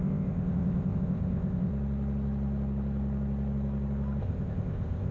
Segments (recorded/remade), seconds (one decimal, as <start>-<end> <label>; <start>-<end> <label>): 0.0-1.7 remade; 1.7-4.2 recorded; 4.2-5.1 remade